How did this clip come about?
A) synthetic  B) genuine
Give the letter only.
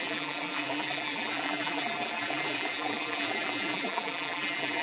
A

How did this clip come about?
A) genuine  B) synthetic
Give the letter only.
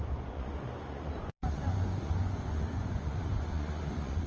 B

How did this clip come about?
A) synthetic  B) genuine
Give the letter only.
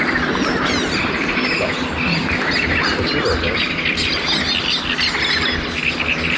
B